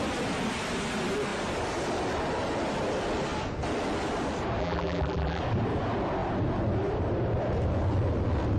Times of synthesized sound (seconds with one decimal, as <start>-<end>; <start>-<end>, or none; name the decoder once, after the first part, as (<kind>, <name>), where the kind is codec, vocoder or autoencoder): 4.6-5.4 (vocoder, BigVGAN v2)